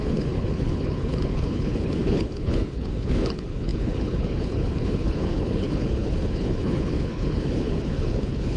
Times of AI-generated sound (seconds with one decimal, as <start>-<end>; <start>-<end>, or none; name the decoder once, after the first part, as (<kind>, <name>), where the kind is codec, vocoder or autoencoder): 0.0-8.6 (codec, HILCodec)